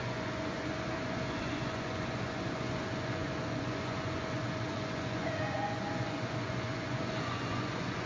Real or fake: fake